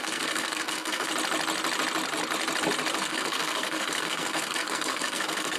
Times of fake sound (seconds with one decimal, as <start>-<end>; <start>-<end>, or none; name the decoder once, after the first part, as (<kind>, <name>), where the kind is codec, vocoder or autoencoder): 0.0-1.1 (codec, SNAC); 3.0-5.6